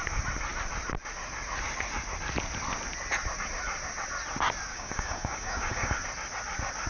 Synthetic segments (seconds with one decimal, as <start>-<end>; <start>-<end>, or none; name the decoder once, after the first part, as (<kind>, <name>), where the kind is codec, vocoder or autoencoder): 4.7-5.9 (codec, DAC)